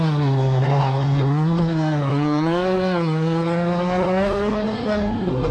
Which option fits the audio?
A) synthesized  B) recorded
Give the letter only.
A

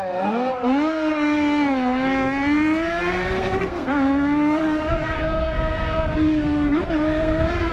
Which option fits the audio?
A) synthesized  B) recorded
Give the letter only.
A